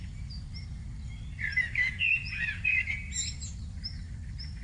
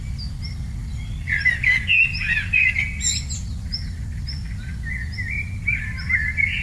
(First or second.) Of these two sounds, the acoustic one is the second